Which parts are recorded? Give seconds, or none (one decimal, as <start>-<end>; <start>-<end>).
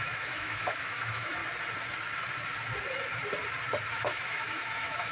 1.4-3.9